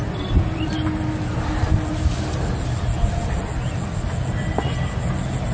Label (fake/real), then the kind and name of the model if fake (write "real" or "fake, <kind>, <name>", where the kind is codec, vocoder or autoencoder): real